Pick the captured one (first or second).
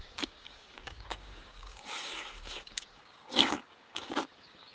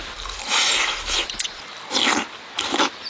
second